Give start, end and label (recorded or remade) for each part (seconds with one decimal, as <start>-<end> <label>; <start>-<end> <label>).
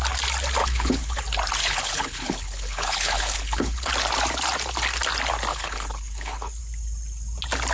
0.0-0.6 recorded; 0.6-1.2 remade; 1.2-1.6 recorded; 1.6-3.9 remade; 3.9-5.5 recorded; 5.5-6.6 remade; 6.6-7.7 recorded